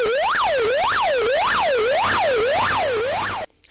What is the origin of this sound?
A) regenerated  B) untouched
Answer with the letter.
B